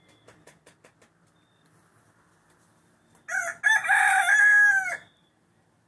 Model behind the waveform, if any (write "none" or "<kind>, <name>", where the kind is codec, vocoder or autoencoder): none